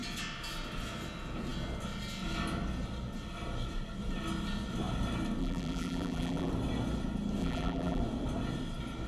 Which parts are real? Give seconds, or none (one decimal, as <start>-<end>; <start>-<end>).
0.0-5.4; 6.5-7.4; 8.0-9.1